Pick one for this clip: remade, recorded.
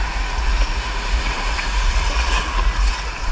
remade